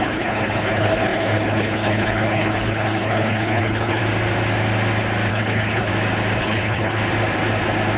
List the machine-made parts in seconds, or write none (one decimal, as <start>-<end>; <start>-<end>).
0.0-4.0; 5.3-5.9; 6.4-7.0